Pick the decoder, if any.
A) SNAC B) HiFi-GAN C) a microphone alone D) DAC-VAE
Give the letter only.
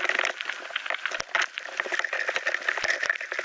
C